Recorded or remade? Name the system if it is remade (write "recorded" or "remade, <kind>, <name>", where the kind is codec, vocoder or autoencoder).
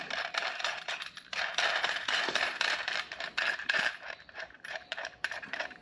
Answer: remade, vocoder, BigVGAN v2